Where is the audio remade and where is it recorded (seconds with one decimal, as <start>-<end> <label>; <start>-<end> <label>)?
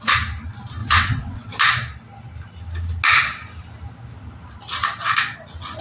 0.0-0.8 recorded; 0.8-1.6 remade; 1.6-5.8 recorded